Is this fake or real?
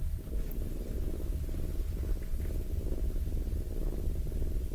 real